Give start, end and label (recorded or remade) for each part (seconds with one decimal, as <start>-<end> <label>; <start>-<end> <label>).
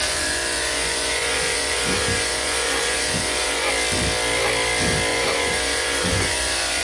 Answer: 0.0-3.7 remade; 3.7-5.1 recorded; 5.1-6.8 remade